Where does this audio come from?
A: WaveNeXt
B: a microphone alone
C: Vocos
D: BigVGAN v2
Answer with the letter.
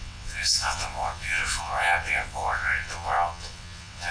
A